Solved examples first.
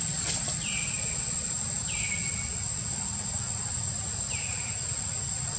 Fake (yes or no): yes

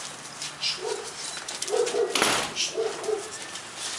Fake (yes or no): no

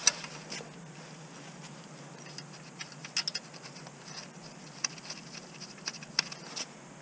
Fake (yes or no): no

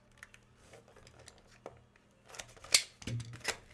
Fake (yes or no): no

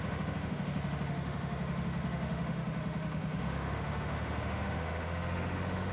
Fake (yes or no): yes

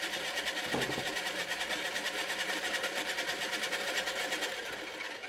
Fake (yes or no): no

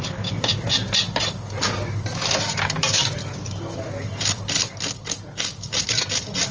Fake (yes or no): no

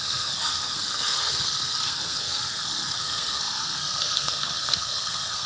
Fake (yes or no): yes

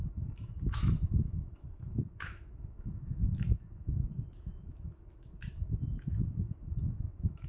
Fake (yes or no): yes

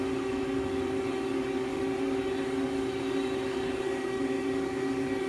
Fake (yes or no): yes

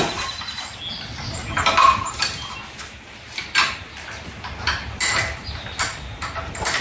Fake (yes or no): no